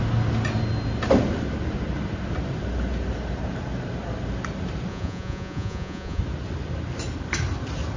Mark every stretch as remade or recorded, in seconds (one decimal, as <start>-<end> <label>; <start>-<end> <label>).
0.0-4.9 recorded; 4.9-6.2 remade; 6.2-8.0 recorded